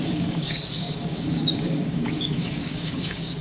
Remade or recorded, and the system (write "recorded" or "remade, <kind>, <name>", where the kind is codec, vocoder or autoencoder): remade, codec, DAC